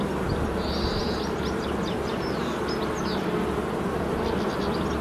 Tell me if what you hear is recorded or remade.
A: recorded